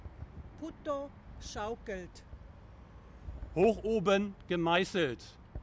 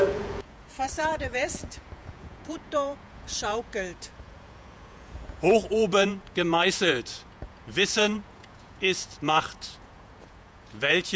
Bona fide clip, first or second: first